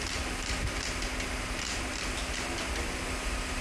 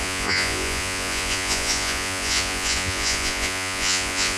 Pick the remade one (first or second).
second